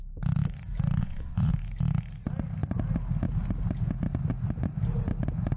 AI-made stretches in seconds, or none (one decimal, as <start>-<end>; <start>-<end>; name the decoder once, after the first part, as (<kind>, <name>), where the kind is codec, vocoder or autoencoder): 1.0-1.5 (vocoder, Vocos)